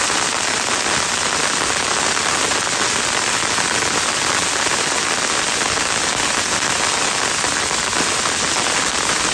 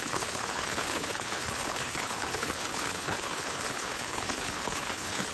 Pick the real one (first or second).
first